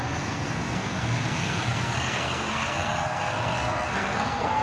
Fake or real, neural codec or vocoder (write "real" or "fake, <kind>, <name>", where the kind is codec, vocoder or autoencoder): fake, codec, SNAC